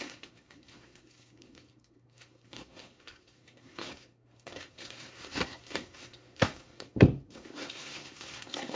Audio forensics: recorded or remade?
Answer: remade